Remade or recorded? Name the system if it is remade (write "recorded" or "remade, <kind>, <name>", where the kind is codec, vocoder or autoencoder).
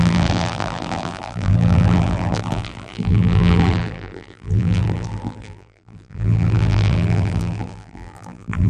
remade, vocoder, BigVGAN v2